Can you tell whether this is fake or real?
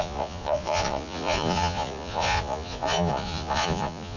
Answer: fake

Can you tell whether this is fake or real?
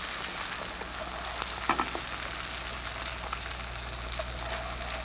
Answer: real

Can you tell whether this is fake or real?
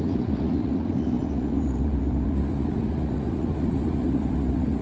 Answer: fake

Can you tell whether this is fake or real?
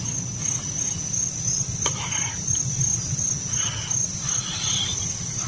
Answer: real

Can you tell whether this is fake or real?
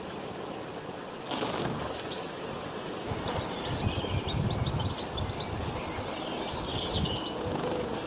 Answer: real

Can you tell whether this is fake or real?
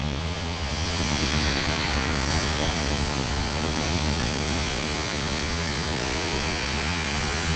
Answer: fake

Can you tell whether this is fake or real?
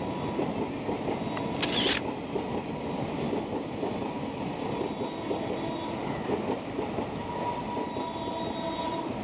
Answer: real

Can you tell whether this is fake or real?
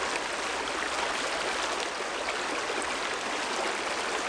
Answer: real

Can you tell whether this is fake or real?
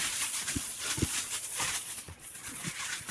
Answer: fake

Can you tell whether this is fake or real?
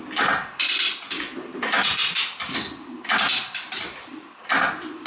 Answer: real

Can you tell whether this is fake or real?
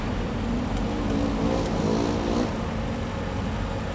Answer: real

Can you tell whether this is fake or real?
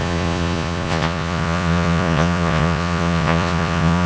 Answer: fake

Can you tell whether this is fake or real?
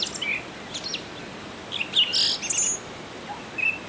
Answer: real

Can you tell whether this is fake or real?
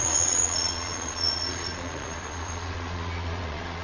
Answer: fake